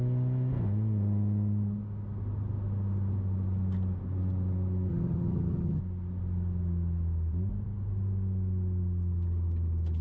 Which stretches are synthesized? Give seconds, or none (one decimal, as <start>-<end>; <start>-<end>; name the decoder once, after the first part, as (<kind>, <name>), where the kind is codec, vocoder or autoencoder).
4.9-5.8 (vocoder, HiFi-GAN)